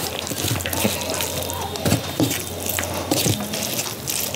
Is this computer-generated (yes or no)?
no